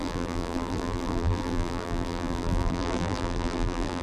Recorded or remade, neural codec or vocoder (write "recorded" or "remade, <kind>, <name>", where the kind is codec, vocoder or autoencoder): remade, vocoder, BigVGAN v2